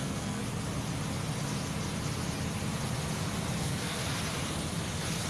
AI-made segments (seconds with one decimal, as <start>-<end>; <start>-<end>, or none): 0.0-0.4; 3.6-4.0